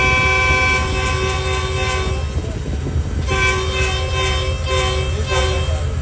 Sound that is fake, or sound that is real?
real